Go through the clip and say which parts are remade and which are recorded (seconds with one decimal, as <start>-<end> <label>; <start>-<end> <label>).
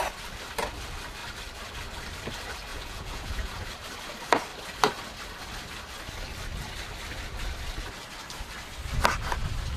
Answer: 0.0-2.7 recorded; 2.7-3.7 remade; 3.7-9.8 recorded